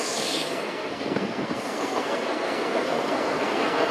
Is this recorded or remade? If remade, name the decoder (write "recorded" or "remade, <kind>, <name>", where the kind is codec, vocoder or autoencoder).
remade, codec, SNAC